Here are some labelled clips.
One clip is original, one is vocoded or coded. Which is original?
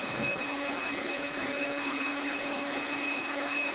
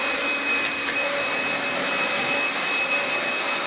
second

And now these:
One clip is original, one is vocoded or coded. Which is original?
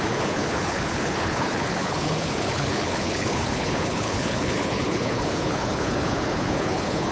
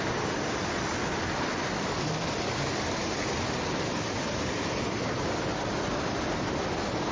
second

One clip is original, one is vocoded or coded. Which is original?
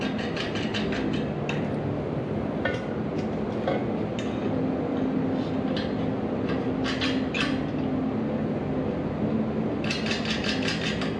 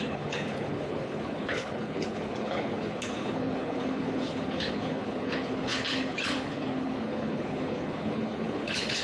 first